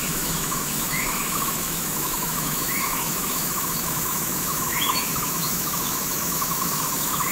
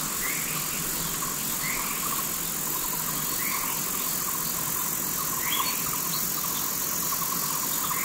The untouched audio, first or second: second